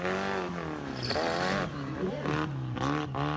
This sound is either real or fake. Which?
real